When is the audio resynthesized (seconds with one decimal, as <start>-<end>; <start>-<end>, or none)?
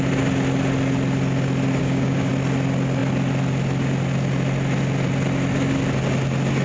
1.8-2.3